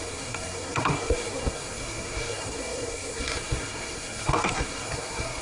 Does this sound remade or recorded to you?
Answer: remade